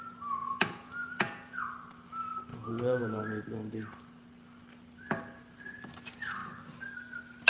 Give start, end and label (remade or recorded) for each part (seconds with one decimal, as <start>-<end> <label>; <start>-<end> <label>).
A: 0.0-0.4 recorded; 0.4-1.6 remade; 1.6-2.5 recorded; 2.5-3.2 remade; 3.2-7.5 recorded

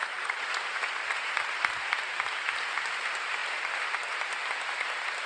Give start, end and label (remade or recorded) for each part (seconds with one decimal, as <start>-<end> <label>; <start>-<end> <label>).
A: 0.0-5.3 recorded